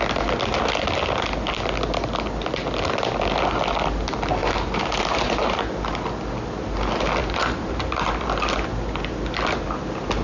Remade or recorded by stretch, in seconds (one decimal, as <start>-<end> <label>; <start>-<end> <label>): 0.0-4.4 recorded; 4.4-5.6 remade; 5.6-7.2 recorded; 7.2-7.7 remade; 7.7-10.2 recorded